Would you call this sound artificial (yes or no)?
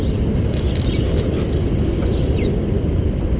no